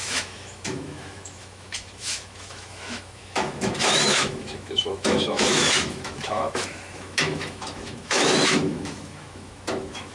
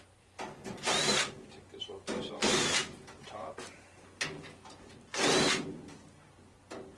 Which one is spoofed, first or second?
first